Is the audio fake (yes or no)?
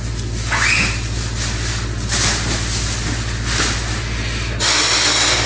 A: no